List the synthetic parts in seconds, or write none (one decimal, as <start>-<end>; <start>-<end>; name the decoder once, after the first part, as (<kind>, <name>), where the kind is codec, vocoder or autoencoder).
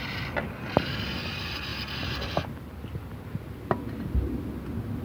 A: none